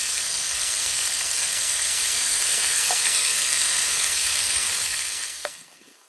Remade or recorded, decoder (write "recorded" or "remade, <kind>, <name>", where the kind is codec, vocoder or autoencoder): remade, codec, SNAC